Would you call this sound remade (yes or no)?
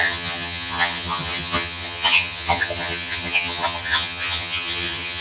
yes